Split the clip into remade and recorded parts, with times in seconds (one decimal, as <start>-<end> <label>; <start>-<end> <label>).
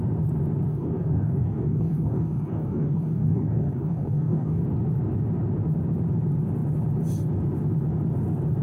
0.0-0.7 recorded; 0.7-4.6 remade; 4.6-8.6 recorded